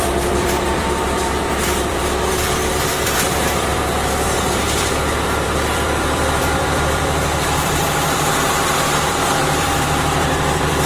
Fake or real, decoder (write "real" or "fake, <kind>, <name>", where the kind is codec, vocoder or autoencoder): fake, vocoder, BigVGAN v2